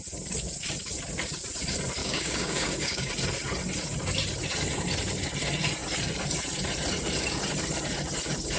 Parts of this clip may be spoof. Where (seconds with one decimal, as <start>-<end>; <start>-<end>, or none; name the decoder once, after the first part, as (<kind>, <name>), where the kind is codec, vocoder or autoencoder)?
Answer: 2.0-3.1 (codec, DAC)